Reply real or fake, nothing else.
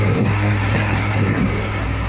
fake